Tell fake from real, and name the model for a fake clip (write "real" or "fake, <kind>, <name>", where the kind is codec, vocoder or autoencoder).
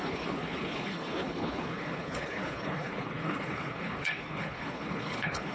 fake, codec, HILCodec